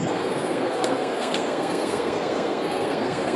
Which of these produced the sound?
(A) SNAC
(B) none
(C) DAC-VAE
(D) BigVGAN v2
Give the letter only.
A